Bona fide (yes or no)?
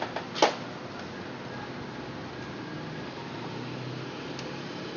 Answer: yes